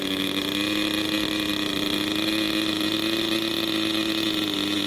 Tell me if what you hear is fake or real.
real